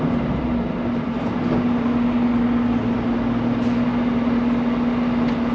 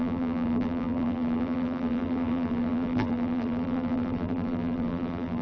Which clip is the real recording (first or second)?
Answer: first